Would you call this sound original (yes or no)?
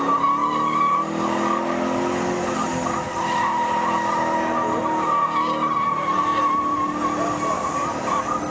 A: yes